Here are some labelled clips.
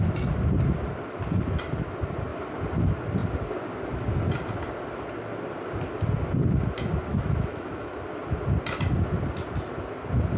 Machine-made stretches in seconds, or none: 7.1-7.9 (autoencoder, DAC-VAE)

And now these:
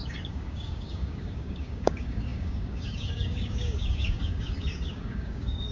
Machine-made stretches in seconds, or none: 0.0-5.7 (codec, DAC)

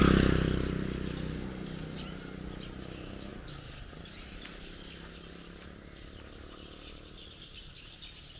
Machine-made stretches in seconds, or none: 3.3-3.9 (vocoder, BigVGAN v2)

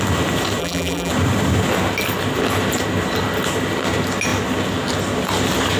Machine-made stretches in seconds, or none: 0.6-1.1 (vocoder, BigVGAN v2)

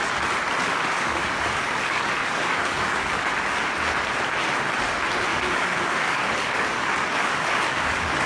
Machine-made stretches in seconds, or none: 0.6-3.1 (codec, DAC); 5.3-8.3

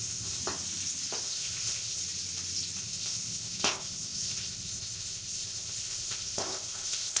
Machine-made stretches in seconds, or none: 0.0-0.4 (codec, ZipCodec); 1.2-2.0; 2.8-7.2

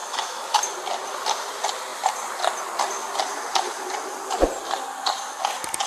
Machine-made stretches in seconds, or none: 0.0-0.6 (autoencoder, DAC-VAE)

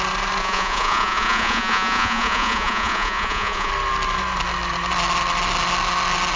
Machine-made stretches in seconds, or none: 0.4-3.7 (vocoder, Vocos)